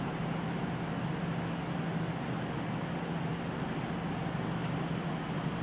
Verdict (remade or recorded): recorded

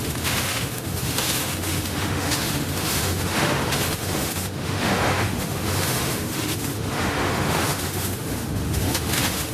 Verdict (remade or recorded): remade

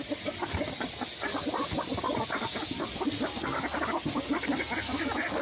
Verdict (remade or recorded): recorded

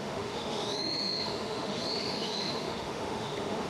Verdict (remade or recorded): remade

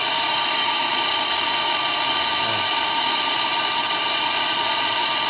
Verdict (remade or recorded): recorded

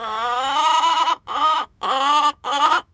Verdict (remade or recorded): remade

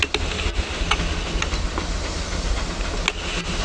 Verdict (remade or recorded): recorded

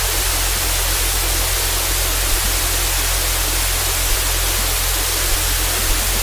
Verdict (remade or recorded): recorded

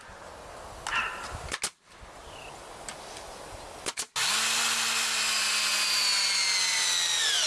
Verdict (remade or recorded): recorded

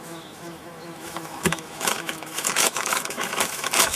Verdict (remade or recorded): remade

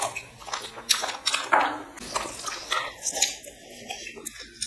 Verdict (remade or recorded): recorded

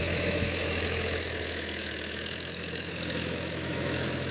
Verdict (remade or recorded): remade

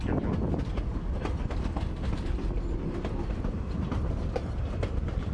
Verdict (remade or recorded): recorded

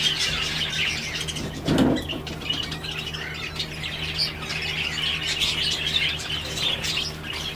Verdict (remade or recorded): recorded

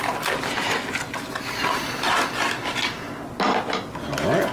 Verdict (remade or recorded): recorded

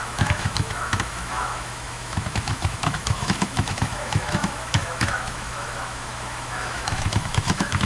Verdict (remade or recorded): remade